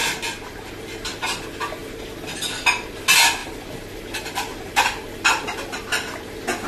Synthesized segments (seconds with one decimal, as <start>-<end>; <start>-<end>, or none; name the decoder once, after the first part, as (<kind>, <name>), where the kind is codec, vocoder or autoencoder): none